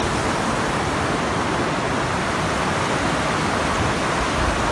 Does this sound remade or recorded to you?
recorded